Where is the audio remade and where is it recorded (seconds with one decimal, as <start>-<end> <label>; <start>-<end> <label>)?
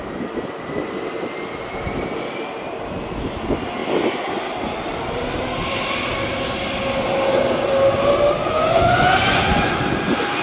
0.0-8.4 recorded; 8.4-9.8 remade; 9.8-10.4 recorded